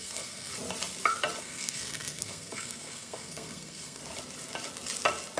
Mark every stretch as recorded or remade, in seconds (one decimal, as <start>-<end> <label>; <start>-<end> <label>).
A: 0.0-0.5 remade; 0.5-1.4 recorded; 1.4-4.0 remade; 4.0-5.4 recorded